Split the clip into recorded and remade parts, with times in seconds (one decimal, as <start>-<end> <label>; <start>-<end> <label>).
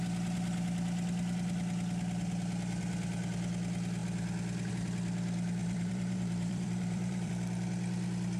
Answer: 0.0-5.6 recorded; 5.6-7.3 remade; 7.3-8.4 recorded